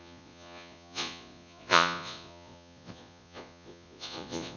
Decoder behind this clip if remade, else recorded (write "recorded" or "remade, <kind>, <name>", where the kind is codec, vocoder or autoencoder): remade, vocoder, Vocos